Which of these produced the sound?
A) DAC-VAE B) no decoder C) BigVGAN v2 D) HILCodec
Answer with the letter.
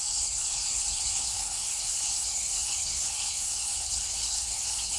D